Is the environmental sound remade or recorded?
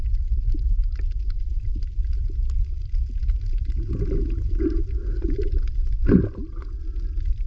recorded